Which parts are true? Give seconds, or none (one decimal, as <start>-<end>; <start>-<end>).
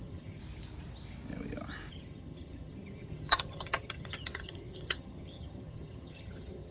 0.4-1.9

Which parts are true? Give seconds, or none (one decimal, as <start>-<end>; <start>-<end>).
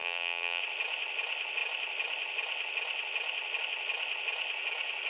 0.6-5.1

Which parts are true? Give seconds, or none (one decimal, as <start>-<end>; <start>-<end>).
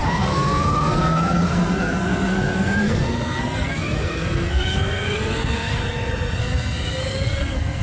5.8-6.4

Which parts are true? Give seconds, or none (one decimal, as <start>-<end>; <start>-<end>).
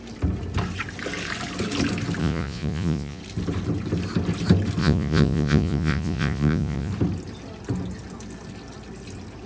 0.0-2.2; 3.2-4.8; 6.9-9.5